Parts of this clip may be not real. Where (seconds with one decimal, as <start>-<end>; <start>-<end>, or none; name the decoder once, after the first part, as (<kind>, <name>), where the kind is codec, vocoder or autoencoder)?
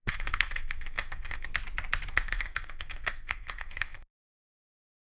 0.0-1.5 (codec, SNAC); 2.1-5.0